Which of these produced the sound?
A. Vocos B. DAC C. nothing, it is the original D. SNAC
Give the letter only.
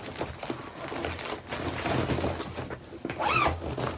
C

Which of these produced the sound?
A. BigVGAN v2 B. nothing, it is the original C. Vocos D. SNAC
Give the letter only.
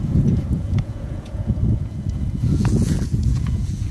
C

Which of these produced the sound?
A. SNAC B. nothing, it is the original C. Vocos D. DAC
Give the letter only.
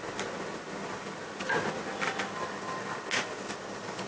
B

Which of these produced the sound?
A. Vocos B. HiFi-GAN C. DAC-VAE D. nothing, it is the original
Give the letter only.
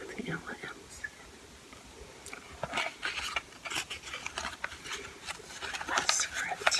D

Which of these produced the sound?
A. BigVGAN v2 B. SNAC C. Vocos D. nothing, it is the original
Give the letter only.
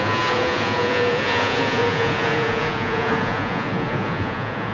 C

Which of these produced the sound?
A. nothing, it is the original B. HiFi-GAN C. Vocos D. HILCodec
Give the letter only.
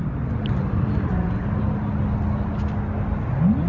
A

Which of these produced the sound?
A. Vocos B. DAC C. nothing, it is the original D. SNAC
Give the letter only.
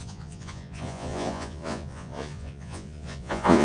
A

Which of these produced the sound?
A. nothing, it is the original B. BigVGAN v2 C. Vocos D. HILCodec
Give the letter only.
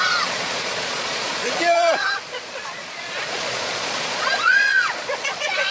C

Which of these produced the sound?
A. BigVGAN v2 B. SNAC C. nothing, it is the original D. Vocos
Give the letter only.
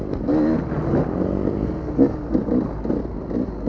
C